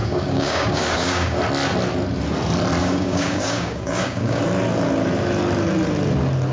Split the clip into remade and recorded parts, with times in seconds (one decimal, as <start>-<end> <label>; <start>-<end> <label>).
0.0-1.4 remade; 1.4-2.8 recorded; 2.8-4.4 remade; 4.4-6.5 recorded